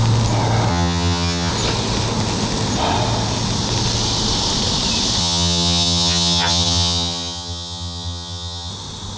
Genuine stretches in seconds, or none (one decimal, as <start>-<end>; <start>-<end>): 0.0-0.7; 1.5-5.2; 8.7-9.2